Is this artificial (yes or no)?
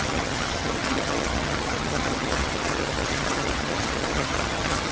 yes